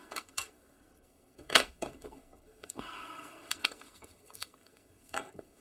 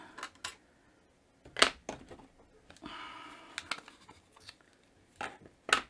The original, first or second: second